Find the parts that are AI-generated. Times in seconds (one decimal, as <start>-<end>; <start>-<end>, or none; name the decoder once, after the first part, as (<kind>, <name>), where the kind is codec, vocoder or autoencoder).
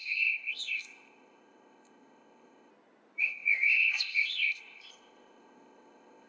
0.0-2.7 (codec, ZipCodec); 3.2-6.3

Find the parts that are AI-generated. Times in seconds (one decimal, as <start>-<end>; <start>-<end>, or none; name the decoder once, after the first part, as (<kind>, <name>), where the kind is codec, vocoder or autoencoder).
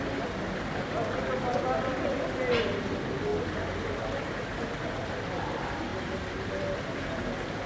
none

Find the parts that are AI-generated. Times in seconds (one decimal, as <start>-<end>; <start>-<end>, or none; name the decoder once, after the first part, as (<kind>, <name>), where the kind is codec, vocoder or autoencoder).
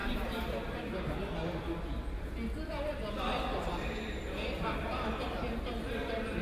none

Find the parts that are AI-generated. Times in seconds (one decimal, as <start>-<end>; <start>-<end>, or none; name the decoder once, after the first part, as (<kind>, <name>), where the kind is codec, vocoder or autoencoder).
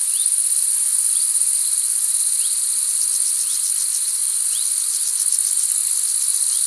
none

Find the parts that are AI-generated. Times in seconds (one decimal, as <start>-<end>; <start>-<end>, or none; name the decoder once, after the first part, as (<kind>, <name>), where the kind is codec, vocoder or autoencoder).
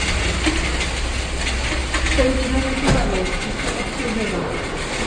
none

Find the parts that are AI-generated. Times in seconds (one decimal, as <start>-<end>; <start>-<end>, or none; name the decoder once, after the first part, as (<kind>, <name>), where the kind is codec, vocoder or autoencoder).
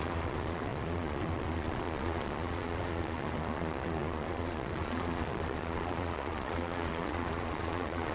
0.0-8.1 (vocoder, Vocos)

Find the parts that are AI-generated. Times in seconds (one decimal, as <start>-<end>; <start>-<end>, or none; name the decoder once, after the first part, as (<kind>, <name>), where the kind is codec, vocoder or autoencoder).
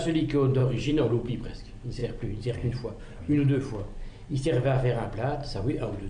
0.6-1.3 (vocoder, BigVGAN v2); 5.4-6.1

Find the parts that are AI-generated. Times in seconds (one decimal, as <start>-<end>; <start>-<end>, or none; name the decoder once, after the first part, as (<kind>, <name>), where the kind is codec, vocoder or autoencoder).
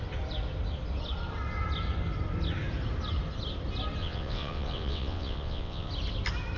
4.0-5.9 (vocoder, WaveNeXt)